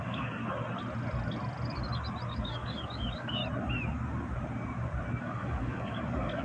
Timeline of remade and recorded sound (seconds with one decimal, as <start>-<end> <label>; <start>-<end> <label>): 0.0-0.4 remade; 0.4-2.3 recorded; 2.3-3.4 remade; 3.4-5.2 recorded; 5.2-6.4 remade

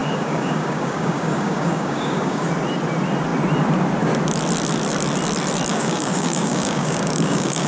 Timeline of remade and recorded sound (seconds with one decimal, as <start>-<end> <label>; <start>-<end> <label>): 0.0-2.5 remade; 2.5-5.7 recorded; 5.7-7.7 remade

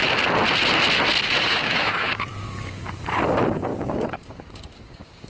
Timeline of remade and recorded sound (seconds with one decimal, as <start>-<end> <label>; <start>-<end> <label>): 0.0-1.4 recorded; 1.4-2.8 remade; 2.8-3.7 recorded; 3.7-5.3 remade

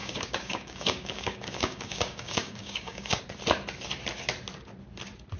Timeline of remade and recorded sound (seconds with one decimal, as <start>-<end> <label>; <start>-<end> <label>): 0.0-3.2 remade; 3.2-5.4 recorded

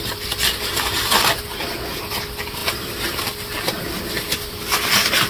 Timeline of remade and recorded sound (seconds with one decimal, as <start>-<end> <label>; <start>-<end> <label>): 0.0-5.3 recorded